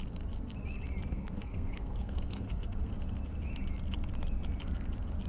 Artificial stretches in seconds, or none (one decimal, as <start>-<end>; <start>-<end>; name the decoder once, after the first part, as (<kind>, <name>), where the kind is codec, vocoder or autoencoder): 1.1-2.9 (codec, SNAC)

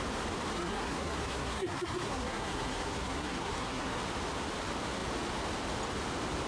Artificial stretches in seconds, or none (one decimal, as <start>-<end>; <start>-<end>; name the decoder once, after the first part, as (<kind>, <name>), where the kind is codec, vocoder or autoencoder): 0.5-4.0 (codec, SNAC)

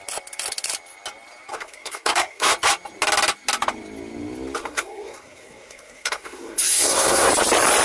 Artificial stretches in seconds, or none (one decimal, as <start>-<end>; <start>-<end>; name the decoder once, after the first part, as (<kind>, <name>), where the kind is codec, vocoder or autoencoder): 1.5-2.5 (codec, SNAC); 4.6-7.3

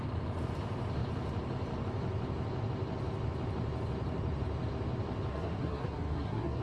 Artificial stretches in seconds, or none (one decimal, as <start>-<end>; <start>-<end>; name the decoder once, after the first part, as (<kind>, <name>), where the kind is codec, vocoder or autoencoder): 5.3-6.6 (codec, SNAC)

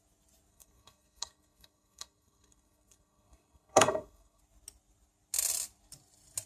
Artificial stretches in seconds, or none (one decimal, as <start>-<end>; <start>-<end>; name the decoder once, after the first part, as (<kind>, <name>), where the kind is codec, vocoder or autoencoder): 0.5-4.4 (codec, SNAC)

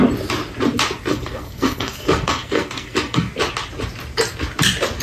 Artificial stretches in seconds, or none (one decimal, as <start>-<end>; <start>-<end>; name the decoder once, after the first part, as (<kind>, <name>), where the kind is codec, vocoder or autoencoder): 1.1-3.3 (codec, SNAC)